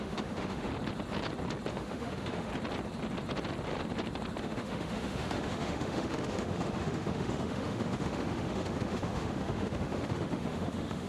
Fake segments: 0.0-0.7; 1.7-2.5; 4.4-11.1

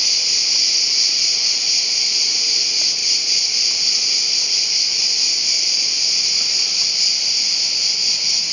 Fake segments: none

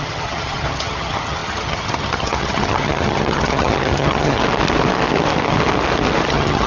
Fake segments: 0.0-4.4; 6.3-6.7